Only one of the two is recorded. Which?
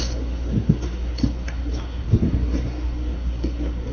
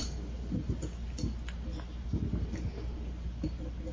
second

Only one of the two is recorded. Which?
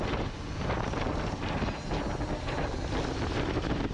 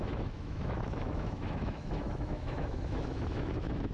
first